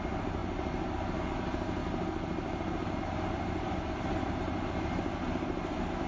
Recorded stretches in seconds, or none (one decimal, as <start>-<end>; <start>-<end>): 0.0-6.1